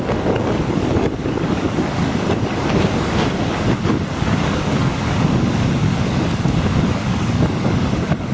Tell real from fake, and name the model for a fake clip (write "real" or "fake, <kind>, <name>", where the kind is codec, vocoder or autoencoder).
fake, codec, DAC